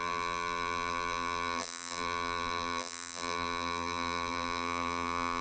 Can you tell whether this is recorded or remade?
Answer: remade